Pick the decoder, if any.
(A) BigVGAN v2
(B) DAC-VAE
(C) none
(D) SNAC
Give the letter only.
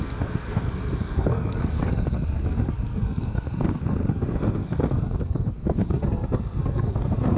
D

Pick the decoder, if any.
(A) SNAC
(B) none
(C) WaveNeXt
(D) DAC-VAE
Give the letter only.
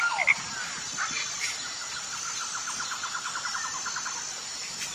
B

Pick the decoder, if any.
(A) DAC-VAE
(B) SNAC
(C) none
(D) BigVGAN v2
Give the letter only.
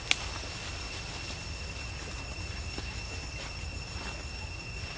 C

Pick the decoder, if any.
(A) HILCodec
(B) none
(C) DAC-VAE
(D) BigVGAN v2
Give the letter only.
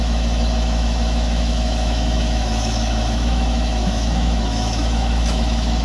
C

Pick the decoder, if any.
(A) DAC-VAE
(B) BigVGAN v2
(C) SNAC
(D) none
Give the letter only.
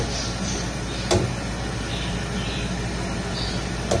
D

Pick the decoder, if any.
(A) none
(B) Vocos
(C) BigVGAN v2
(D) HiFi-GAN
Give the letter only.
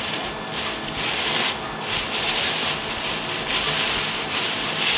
A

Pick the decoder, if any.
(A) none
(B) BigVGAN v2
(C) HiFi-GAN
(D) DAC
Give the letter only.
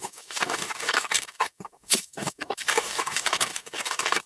D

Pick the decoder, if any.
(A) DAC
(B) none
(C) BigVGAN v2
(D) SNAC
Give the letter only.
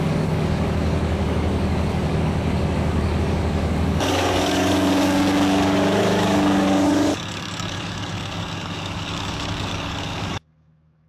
A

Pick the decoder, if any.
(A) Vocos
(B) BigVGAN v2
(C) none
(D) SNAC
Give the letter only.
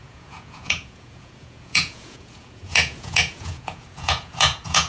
A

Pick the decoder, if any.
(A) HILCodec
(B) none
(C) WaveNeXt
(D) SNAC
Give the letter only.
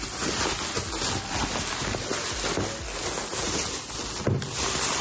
B